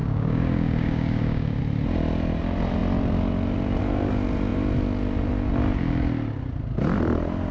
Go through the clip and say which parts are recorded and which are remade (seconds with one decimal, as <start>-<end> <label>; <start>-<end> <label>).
0.0-1.6 remade; 1.6-7.5 recorded